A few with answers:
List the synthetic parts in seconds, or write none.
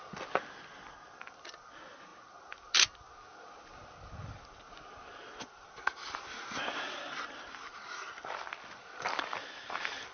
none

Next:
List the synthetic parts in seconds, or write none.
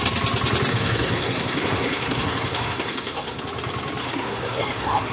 0.7-3.4 (codec, SNAC); 4.0-5.1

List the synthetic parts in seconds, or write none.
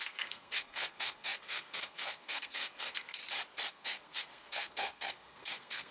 0.0-3.2 (codec, SNAC); 3.7-5.9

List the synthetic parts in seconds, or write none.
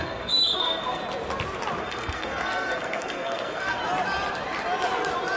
0.0-1.0 (codec, SNAC); 1.8-3.8